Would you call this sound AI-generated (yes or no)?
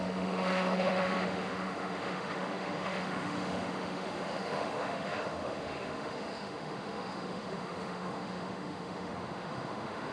yes